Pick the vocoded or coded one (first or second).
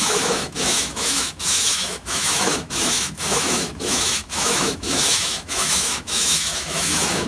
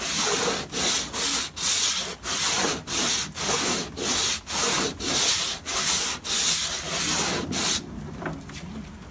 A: first